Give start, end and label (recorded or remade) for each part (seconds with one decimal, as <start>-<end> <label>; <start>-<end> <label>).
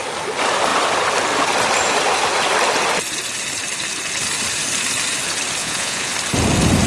0.0-5.6 recorded; 5.6-6.1 remade; 6.1-6.9 recorded